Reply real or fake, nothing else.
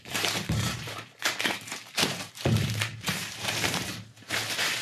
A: fake